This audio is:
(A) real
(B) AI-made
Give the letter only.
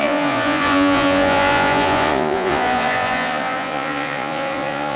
B